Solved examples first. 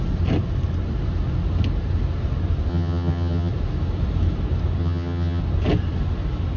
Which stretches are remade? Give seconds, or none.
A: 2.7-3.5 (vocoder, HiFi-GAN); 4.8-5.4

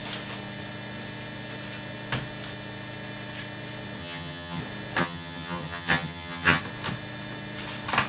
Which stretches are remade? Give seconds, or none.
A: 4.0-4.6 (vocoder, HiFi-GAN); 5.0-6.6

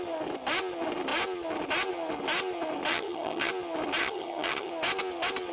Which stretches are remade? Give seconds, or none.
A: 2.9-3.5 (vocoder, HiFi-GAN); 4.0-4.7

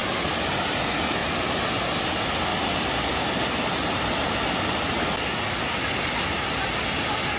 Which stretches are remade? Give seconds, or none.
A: none

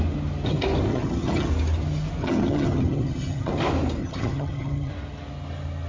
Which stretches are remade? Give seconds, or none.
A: 0.9-1.5 (vocoder, HiFi-GAN); 2.2-3.5; 4.0-4.9

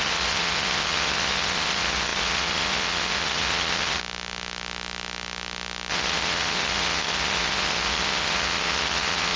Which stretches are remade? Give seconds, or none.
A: 0.0-4.0 (vocoder, HiFi-GAN); 5.9-9.4

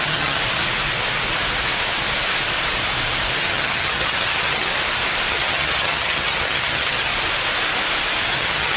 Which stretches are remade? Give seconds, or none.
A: 0.0-0.4 (vocoder, HiFi-GAN); 3.4-4.7; 5.3-7.1; 8.4-8.8